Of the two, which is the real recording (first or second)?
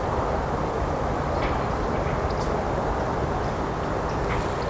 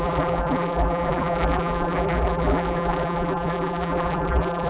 first